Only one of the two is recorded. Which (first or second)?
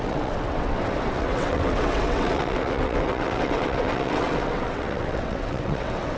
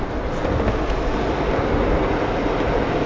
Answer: second